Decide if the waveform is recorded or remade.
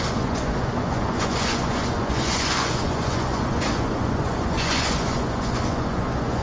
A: remade